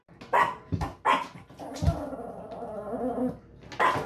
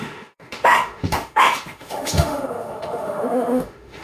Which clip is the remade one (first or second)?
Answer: second